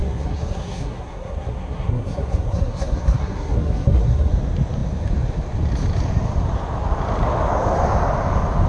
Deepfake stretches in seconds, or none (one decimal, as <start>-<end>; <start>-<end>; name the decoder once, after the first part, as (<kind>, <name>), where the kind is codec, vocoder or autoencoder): 0.0-4.3 (codec, SNAC)